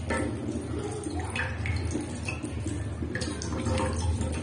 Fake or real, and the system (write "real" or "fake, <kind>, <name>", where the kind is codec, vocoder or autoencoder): real